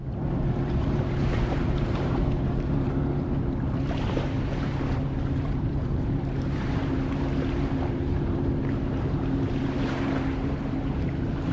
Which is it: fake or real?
fake